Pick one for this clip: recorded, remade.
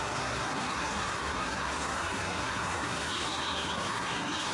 remade